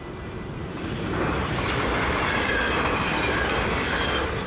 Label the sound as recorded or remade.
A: recorded